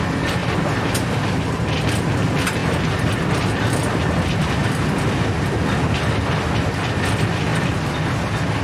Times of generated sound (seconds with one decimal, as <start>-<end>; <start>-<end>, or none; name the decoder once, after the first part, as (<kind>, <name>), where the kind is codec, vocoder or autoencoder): 0.4-2.0 (vocoder, BigVGAN v2)